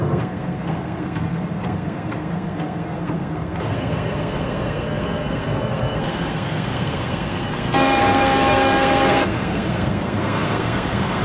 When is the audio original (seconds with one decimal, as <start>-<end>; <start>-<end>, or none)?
none